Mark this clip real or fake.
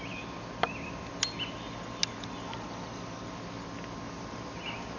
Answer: real